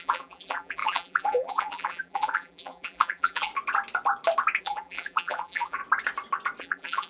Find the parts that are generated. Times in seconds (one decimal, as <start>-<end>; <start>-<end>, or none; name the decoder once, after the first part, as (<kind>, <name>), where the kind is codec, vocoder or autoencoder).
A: 0.0-3.5 (vocoder, BigVGAN v2); 4.6-5.8; 6.6-7.1